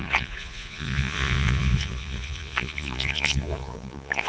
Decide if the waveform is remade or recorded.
remade